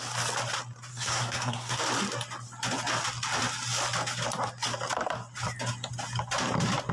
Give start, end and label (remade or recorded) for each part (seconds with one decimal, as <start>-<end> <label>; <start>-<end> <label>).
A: 0.0-0.9 recorded; 0.9-1.8 remade; 1.8-6.9 recorded